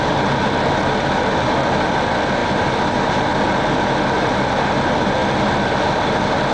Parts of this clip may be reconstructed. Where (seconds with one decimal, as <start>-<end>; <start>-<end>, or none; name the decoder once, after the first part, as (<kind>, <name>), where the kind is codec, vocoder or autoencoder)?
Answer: none